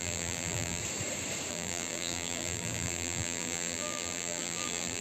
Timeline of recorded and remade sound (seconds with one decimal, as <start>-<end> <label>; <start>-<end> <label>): 0.0-0.8 remade; 0.8-1.5 recorded; 1.5-5.0 remade